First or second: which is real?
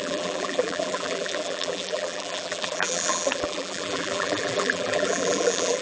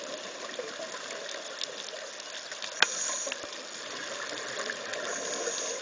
second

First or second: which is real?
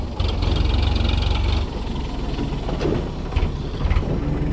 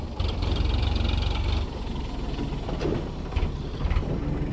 first